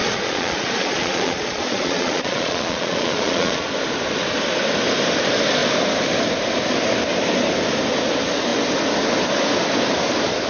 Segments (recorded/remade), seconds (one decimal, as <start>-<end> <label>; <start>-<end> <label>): 0.0-3.7 remade; 3.7-10.5 recorded